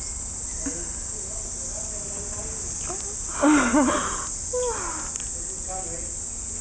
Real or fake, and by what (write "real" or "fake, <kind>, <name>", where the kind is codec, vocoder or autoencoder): real